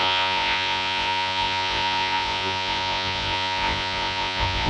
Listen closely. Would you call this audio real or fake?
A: fake